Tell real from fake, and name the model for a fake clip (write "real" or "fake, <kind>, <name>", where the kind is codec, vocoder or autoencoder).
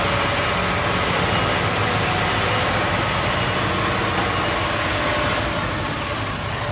real